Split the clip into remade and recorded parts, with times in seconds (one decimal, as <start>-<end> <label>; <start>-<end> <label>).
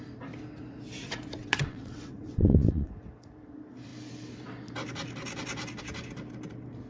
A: 0.0-1.4 recorded; 1.4-2.9 remade; 2.9-6.9 recorded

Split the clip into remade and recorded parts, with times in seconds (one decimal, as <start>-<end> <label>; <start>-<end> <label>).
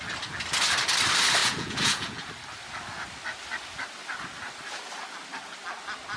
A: 0.0-1.4 recorded; 1.4-2.3 remade; 2.3-6.2 recorded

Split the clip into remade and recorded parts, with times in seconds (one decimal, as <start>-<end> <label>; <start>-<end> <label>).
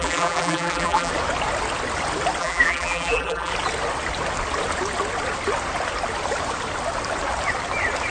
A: 0.0-1.1 remade; 1.1-2.4 recorded; 2.4-3.5 remade; 3.5-8.1 recorded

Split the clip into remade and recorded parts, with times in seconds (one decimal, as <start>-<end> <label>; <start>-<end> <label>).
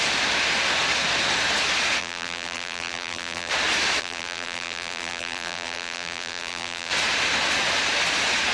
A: 0.0-2.0 recorded; 2.0-3.5 remade; 3.5-4.0 recorded; 4.0-6.9 remade; 6.9-8.5 recorded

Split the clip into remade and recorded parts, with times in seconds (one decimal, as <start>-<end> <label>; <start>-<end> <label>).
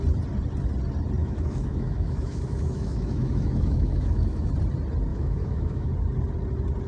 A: 0.0-1.2 recorded; 1.2-4.5 remade; 4.5-5.1 recorded; 5.1-5.9 remade; 5.9-6.9 recorded